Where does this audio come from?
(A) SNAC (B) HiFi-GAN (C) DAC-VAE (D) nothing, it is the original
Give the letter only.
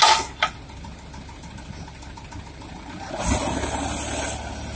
D